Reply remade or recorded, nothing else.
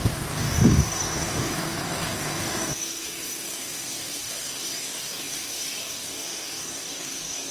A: remade